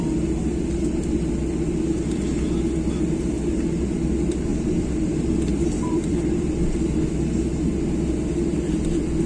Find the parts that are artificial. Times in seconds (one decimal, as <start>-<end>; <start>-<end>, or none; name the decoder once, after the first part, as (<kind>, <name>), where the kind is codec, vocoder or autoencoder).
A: 4.5-7.0 (vocoder, BigVGAN v2)